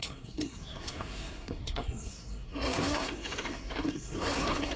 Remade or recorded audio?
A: remade